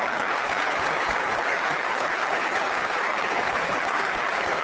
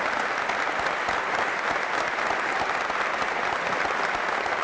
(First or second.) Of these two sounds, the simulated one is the first